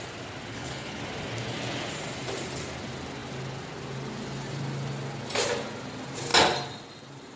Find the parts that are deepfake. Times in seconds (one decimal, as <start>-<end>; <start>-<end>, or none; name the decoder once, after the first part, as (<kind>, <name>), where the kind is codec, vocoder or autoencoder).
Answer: 0.5-1.0 (codec, HILCodec)